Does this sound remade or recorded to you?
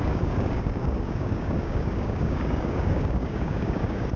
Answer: remade